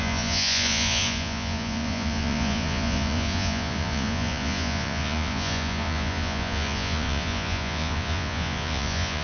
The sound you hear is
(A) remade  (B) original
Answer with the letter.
A